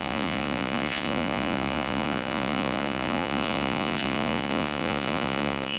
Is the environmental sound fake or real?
fake